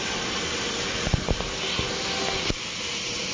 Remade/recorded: recorded